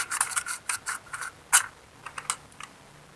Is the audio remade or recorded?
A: recorded